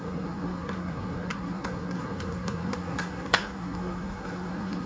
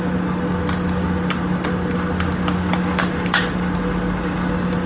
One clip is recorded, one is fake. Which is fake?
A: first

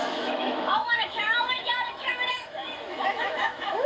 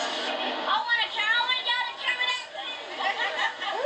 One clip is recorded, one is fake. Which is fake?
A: first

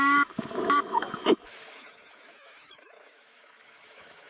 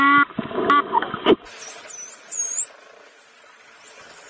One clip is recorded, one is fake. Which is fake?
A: first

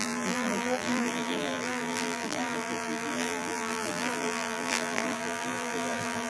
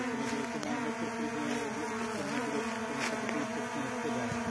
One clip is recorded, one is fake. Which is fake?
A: first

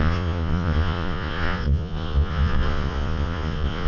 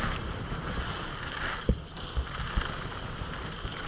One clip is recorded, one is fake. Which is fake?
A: first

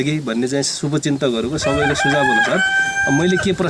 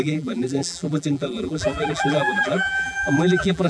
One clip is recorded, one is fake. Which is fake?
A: second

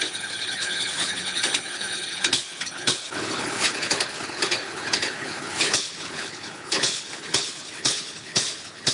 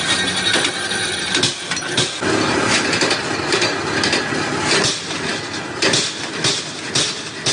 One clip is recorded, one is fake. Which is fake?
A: first